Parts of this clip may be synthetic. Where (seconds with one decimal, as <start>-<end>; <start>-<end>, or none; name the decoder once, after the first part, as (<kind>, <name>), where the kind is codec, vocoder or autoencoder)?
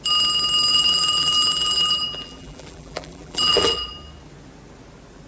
0.7-3.9 (vocoder, BigVGAN v2)